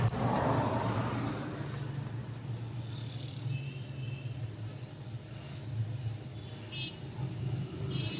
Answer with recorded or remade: recorded